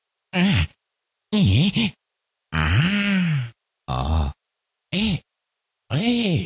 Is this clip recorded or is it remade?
recorded